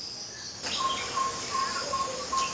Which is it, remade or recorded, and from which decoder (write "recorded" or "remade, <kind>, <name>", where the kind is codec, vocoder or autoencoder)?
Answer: recorded